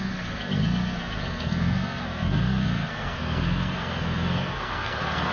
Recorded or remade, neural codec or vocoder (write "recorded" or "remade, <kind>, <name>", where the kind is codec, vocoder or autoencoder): remade, codec, SNAC